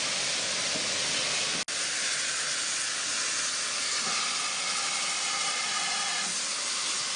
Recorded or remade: recorded